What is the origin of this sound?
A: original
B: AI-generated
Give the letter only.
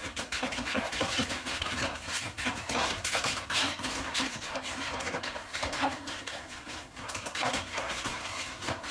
B